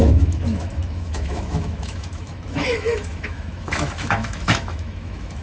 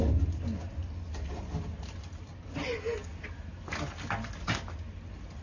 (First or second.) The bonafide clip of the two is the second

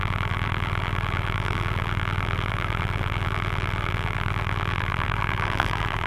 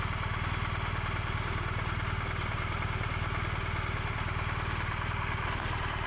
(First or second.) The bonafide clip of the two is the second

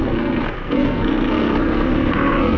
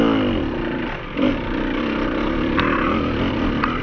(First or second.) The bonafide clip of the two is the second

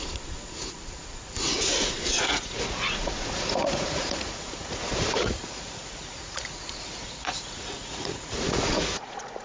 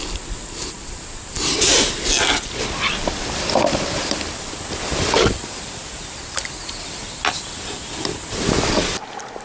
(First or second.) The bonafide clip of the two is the second